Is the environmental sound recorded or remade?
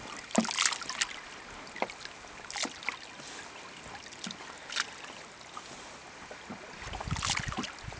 recorded